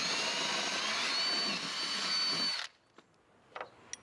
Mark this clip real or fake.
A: real